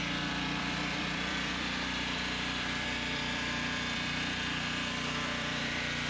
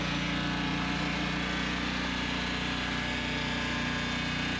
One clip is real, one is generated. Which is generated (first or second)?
first